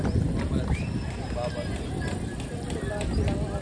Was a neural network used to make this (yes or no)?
no